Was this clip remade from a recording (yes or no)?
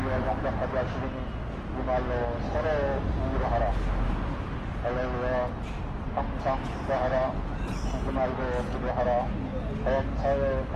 no